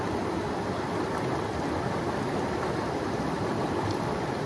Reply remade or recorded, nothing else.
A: recorded